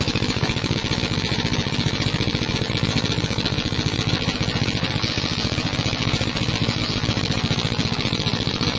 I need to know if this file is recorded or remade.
remade